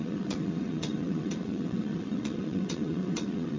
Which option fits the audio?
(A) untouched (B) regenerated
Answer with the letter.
B